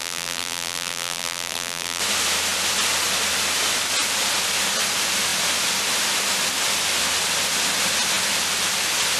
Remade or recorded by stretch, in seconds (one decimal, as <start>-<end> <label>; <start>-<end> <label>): 0.0-2.0 remade; 2.0-9.2 recorded